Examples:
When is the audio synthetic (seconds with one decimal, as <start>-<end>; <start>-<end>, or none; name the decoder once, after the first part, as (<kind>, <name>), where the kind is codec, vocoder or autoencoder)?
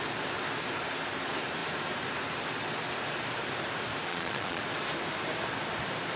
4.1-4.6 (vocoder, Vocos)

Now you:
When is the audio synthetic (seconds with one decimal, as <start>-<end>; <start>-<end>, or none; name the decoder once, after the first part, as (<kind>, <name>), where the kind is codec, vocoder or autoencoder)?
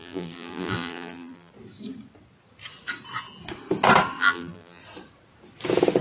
0.0-1.5 (vocoder, BigVGAN v2); 4.2-4.8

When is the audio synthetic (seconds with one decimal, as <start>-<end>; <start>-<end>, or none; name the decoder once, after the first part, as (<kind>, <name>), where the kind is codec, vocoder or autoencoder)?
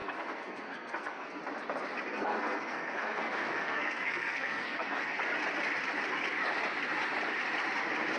0.0-1.4 (codec, SNAC); 2.1-5.2